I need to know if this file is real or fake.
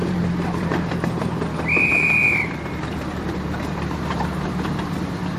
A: fake